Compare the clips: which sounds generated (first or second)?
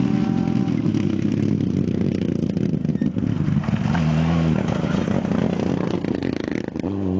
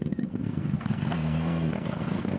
second